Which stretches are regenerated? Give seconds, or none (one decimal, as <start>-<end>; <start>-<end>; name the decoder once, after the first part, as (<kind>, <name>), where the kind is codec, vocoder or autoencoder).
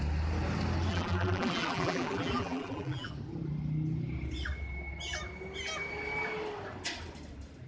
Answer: 0.9-3.1 (vocoder, BigVGAN v2)